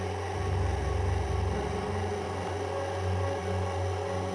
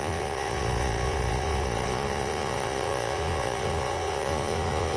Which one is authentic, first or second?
first